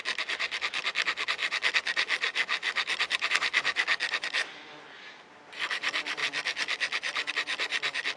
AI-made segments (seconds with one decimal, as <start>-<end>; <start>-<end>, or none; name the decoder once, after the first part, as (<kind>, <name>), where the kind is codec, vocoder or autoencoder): none